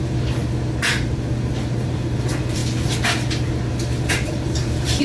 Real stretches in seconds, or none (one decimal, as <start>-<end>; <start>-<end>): 0.4-1.8; 2.6-4.1